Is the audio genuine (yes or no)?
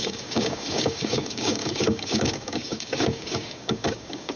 no